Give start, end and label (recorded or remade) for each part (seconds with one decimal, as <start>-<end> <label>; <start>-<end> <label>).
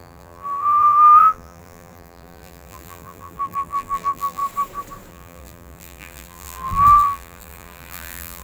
0.0-4.4 remade; 4.4-5.1 recorded; 5.1-8.4 remade